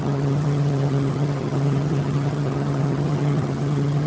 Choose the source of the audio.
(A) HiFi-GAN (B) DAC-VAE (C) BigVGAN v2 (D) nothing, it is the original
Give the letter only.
A